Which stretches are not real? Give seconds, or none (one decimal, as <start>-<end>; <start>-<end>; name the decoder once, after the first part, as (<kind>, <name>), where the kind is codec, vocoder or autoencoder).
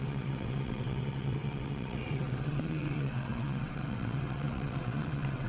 0.0-5.5 (vocoder, WaveNeXt)